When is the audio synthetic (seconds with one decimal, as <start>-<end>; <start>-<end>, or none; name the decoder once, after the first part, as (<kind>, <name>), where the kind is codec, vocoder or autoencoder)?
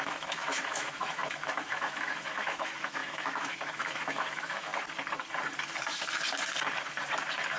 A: 0.0-4.7 (autoencoder, DAC-VAE)